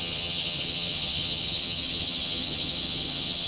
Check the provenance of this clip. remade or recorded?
remade